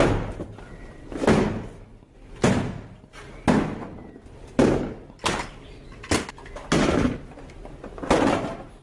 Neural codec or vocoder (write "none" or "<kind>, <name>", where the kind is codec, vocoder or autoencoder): none